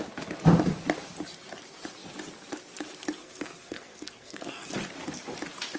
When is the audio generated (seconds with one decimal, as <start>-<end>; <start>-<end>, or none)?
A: 3.2-4.7